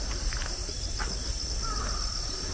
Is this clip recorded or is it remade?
recorded